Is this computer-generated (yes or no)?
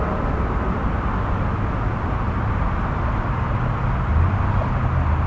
no